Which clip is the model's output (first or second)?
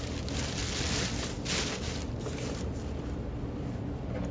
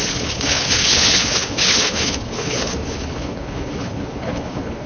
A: second